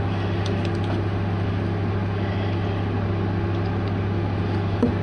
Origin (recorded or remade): recorded